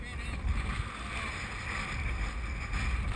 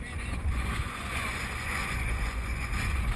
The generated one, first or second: second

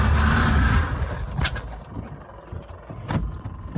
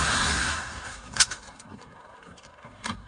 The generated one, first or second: second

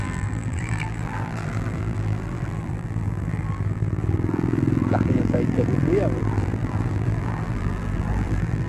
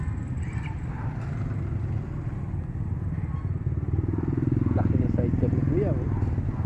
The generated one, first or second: first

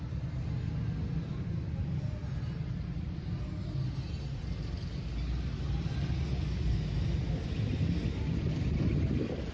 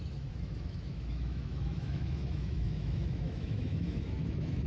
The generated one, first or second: second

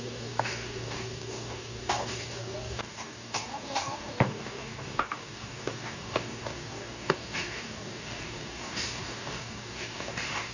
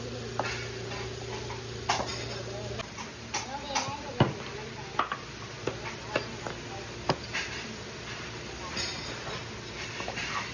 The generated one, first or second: first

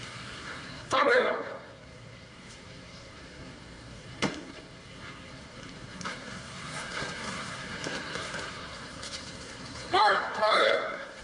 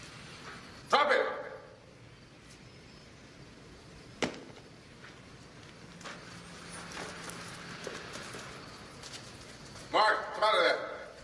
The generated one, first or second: first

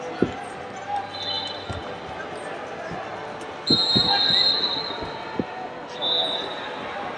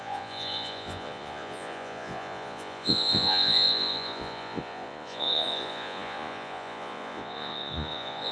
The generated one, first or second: second